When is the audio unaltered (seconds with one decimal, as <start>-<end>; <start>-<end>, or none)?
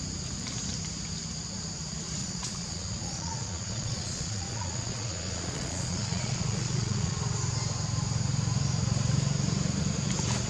0.0-2.2; 7.2-10.5